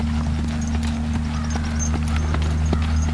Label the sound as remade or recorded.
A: recorded